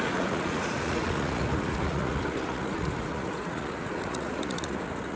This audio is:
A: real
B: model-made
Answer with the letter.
B